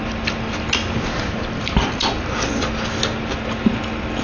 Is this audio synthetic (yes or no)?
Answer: no